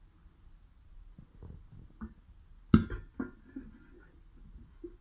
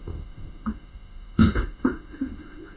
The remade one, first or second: second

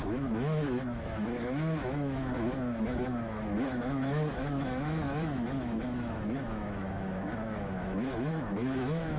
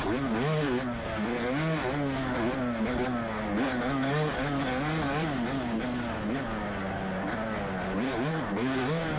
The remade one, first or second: first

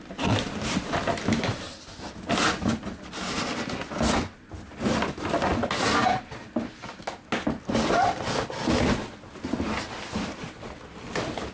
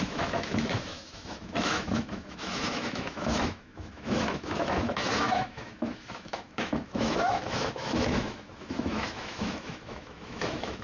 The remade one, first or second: second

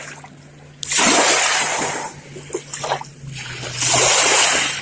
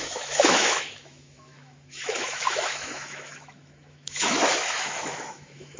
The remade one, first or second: second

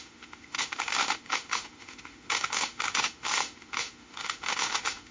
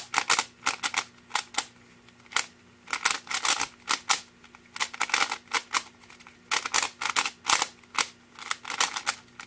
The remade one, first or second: first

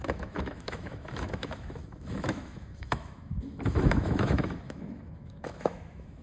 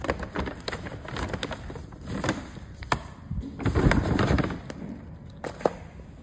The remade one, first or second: first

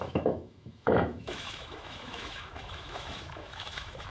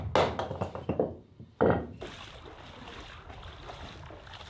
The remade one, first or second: first